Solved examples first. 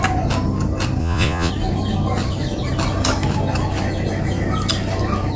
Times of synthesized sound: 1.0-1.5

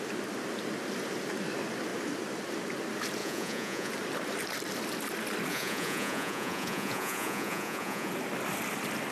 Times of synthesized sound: 3.2-3.9; 5.5-8.1

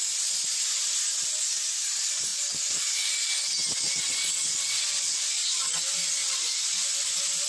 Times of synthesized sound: none

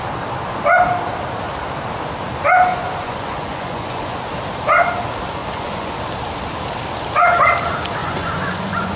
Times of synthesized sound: 2.7-4.2; 5.4-6.0; 8.0-9.0

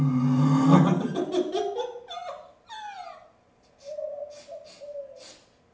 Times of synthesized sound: none

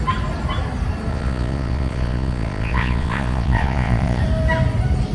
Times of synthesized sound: 1.1-4.2

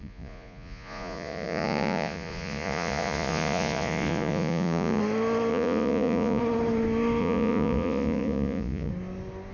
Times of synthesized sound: 0.0-5.0; 5.5-6.4; 7.2-8.9

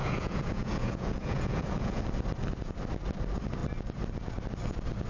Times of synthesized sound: 0.0-2.0